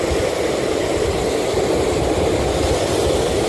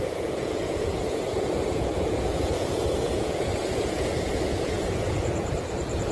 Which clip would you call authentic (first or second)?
first